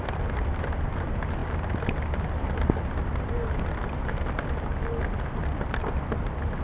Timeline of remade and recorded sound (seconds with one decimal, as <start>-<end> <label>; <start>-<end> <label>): 0.0-6.6 recorded